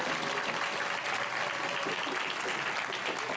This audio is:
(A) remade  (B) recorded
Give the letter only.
B